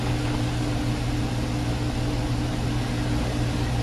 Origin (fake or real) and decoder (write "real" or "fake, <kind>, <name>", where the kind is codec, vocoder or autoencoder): real